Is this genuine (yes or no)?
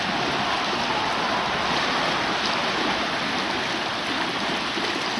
yes